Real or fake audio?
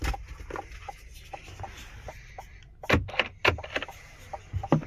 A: real